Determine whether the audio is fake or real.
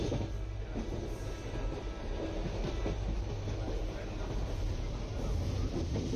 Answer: real